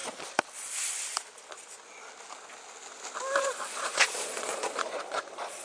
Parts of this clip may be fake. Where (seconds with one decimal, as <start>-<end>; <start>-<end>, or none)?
3.4-5.6